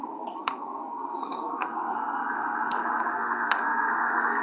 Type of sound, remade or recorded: remade